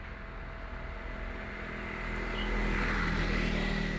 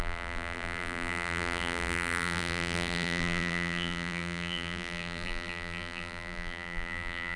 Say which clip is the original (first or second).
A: first